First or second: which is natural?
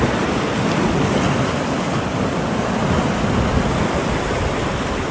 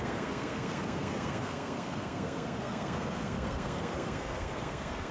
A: first